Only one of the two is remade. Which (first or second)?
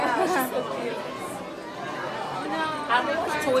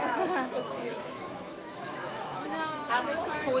second